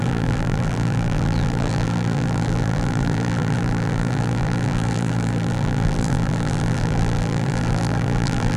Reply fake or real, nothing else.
fake